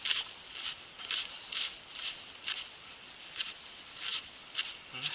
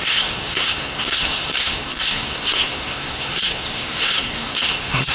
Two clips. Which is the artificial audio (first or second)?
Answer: second